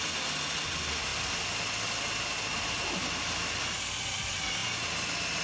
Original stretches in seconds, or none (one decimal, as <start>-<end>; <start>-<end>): 0.0-5.4